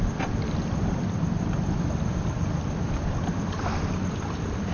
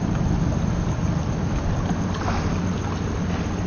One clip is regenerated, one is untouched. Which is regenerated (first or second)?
first